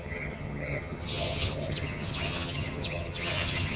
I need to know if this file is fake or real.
fake